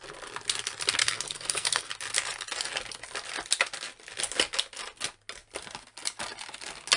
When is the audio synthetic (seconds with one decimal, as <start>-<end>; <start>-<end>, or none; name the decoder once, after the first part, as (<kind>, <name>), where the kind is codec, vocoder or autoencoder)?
1.0-1.9 (codec, SNAC)

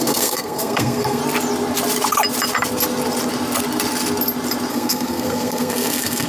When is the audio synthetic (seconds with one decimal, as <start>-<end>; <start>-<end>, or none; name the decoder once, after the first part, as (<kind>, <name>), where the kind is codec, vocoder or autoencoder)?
0.0-1.2 (codec, SNAC); 4.7-6.3

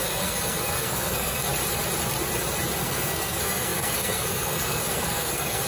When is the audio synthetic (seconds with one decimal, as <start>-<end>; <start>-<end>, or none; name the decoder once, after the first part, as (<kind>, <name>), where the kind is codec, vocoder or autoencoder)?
0.0-1.4 (codec, SNAC); 2.8-5.7

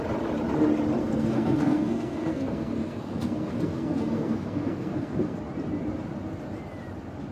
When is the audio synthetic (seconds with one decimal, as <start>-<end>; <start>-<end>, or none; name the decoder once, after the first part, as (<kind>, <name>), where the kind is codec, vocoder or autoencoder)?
1.0-5.4 (codec, SNAC)

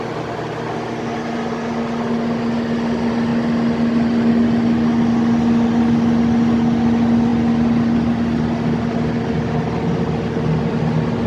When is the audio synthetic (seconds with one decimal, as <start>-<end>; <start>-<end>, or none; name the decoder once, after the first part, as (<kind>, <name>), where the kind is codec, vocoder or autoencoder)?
none

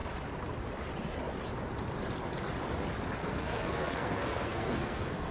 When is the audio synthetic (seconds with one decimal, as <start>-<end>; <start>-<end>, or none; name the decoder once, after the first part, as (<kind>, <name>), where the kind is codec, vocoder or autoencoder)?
3.2-5.3 (codec, SNAC)